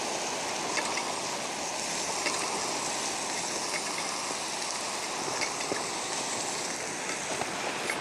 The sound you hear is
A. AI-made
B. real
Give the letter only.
B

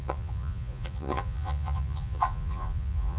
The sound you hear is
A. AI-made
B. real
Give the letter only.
A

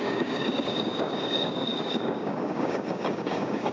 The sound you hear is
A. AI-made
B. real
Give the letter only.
A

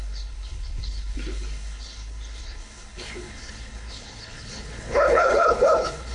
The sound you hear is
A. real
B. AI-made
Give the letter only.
B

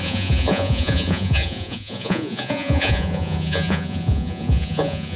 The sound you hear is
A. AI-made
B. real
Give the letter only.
A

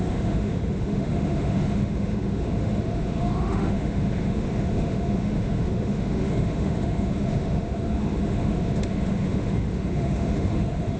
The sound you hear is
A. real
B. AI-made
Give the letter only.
B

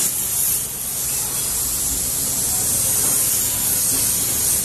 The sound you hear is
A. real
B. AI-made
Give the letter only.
A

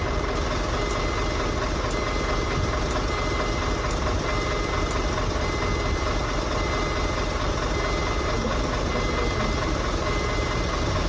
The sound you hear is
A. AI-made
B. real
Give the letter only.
B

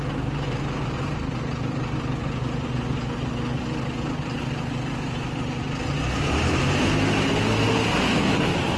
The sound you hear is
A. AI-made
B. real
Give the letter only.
B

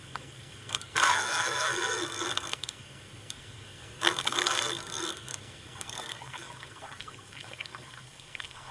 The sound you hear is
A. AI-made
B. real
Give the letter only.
A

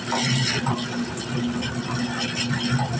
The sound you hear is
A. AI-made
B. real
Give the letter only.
B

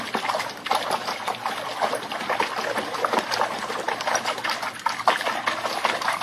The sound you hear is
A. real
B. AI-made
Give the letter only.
A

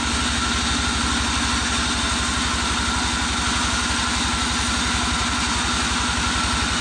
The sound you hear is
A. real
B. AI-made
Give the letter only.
A